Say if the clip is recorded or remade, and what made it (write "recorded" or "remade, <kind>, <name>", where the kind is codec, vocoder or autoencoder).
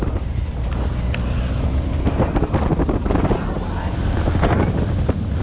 recorded